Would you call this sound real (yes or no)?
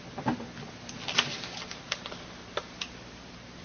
yes